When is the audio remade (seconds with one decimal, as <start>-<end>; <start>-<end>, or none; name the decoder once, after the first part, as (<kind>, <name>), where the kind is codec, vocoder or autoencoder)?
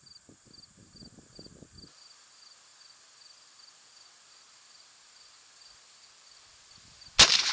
none